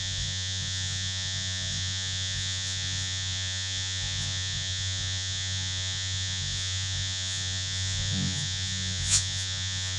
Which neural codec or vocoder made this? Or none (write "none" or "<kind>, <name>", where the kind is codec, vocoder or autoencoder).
vocoder, Vocos